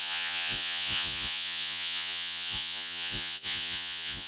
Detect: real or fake fake